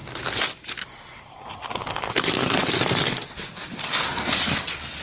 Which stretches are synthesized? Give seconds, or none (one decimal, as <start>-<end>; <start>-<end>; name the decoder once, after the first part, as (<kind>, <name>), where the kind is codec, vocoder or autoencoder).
none